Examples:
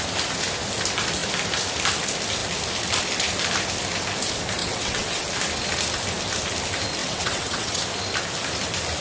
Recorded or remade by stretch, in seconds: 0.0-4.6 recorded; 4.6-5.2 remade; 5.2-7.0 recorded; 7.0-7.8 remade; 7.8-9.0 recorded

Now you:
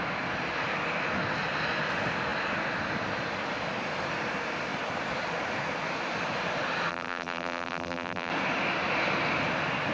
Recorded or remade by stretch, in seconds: 0.0-6.9 recorded; 6.9-8.3 remade; 8.3-9.9 recorded

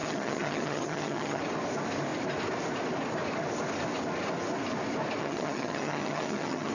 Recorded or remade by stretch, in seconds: 0.0-1.4 remade; 1.4-5.2 recorded; 5.2-6.7 remade

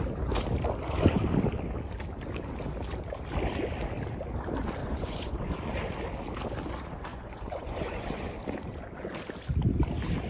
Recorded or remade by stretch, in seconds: 0.0-4.8 recorded; 4.8-5.7 remade; 5.7-7.1 recorded; 7.1-8.3 remade; 8.3-10.3 recorded

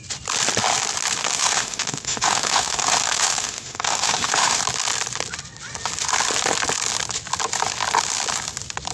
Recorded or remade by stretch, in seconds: 0.0-1.2 recorded; 1.2-4.6 remade; 4.6-8.9 recorded

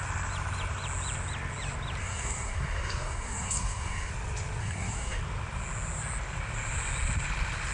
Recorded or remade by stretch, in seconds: 0.0-2.0 recorded; 2.0-4.1 remade; 4.1-4.6 recorded; 4.6-5.2 remade; 5.2-7.7 recorded

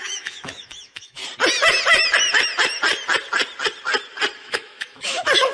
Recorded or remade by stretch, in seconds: 0.0-1.2 remade; 1.2-4.4 recorded; 4.4-5.5 remade